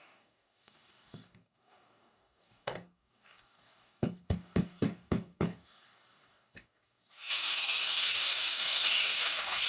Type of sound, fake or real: fake